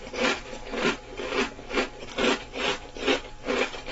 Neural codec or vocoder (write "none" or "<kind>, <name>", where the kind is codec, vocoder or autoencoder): none